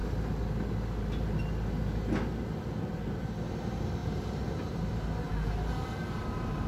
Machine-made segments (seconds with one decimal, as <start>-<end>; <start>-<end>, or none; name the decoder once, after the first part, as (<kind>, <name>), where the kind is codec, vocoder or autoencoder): 2.8-6.7 (vocoder, BigVGAN v2)